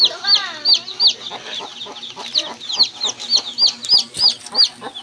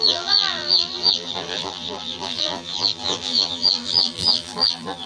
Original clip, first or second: first